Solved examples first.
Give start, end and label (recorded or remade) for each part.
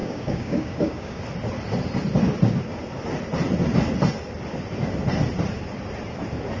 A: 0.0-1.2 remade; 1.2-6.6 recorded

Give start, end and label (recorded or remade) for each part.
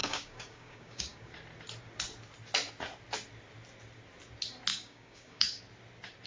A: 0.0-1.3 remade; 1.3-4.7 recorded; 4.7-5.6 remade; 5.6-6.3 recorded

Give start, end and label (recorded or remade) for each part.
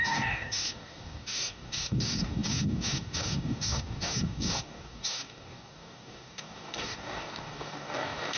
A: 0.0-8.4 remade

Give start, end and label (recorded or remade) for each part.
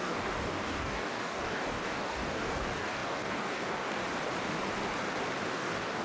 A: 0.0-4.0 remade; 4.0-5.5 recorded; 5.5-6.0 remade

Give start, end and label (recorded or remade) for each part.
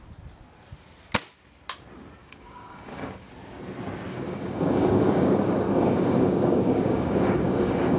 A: 0.0-2.2 recorded; 2.2-3.3 remade; 3.3-4.1 recorded; 4.1-8.0 remade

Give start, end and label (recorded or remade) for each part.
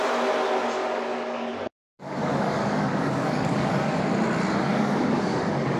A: 0.0-1.1 recorded; 1.1-4.0 remade; 4.0-4.7 recorded; 4.7-5.8 remade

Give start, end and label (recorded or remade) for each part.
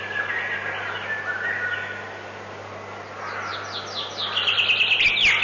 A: 0.0-5.4 recorded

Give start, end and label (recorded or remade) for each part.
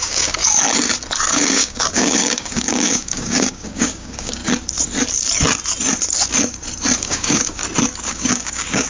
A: 0.0-0.4 remade; 0.4-1.3 recorded; 1.3-4.4 remade; 4.4-7.0 recorded; 7.0-7.6 remade; 7.6-8.1 recorded; 8.1-8.9 remade